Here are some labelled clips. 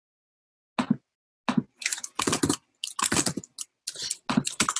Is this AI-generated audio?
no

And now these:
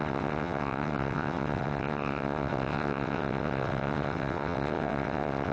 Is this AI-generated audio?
yes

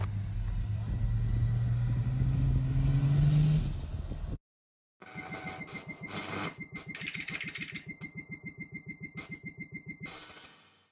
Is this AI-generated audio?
no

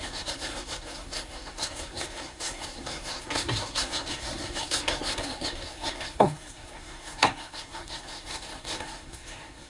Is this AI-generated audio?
yes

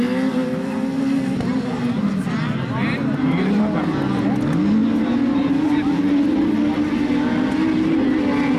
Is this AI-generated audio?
no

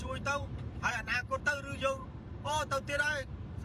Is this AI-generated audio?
yes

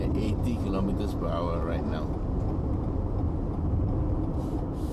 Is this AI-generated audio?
no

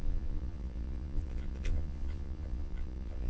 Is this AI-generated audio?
yes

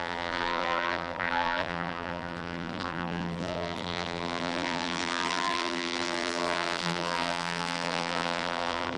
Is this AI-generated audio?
yes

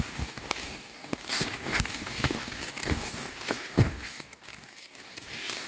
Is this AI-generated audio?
yes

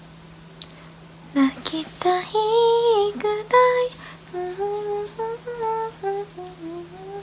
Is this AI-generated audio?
no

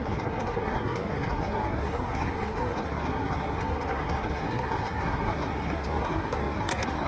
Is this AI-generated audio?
yes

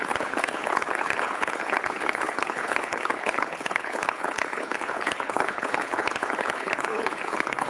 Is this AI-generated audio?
yes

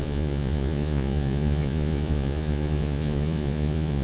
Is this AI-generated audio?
yes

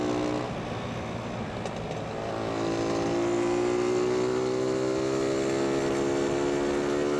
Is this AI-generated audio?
no